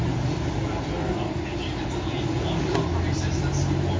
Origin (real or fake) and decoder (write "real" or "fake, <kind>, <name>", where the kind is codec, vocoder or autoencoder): real